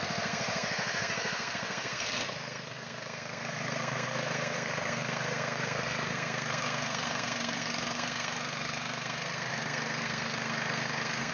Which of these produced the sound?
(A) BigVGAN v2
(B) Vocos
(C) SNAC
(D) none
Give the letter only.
C